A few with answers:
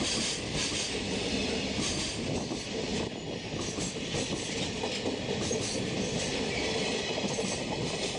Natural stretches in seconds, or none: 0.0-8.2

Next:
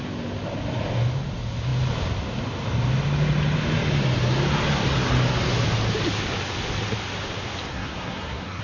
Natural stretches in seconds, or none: 0.0-7.7

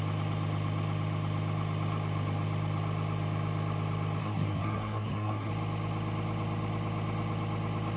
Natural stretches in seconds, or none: 0.0-4.2; 5.5-8.0

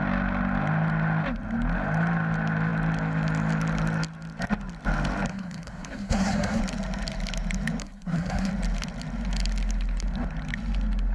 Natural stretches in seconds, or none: 0.0-5.3; 6.6-7.8; 8.5-11.1

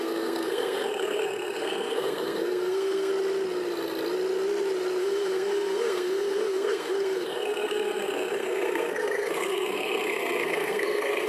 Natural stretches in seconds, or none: 3.1-5.0